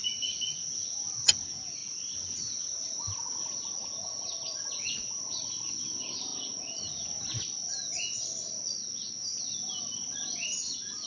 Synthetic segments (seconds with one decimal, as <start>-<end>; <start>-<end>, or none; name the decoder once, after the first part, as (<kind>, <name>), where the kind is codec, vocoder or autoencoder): none

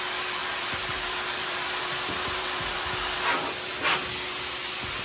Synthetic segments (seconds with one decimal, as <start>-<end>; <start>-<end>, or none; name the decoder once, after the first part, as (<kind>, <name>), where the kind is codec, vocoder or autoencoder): 0.4-2.9 (vocoder, BigVGAN v2)

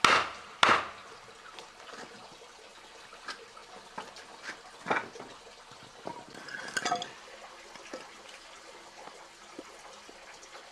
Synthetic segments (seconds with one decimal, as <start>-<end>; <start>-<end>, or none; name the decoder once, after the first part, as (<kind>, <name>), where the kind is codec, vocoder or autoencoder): none

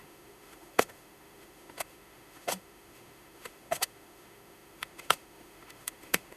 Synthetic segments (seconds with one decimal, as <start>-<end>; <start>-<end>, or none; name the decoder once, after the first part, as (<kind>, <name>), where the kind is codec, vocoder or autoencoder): 0.0-6.4 (autoencoder, DAC-VAE)

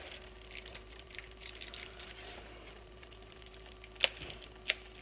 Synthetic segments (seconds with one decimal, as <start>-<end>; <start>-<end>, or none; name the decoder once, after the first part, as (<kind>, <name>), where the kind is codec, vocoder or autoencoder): 0.7-3.7 (vocoder, BigVGAN v2)

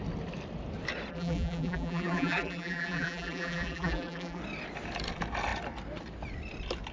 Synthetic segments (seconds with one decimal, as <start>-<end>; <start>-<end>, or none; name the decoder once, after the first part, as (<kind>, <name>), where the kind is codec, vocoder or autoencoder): 1.1-4.4 (vocoder, BigVGAN v2)

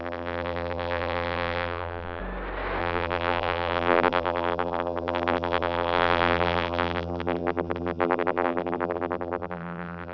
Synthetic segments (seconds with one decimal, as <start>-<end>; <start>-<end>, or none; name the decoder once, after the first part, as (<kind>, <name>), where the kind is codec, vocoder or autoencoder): 0.0-2.2 (vocoder, BigVGAN v2); 2.8-10.1

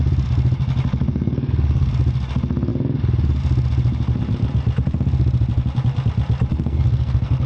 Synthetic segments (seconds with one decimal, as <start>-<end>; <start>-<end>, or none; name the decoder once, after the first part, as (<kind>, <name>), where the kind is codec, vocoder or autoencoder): 1.1-1.9 (codec, SNAC); 6.5-7.5